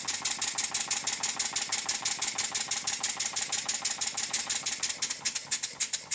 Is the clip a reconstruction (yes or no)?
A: no